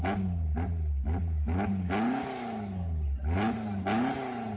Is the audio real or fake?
real